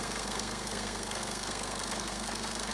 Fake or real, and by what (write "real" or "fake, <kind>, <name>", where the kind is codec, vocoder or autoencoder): fake, codec, SNAC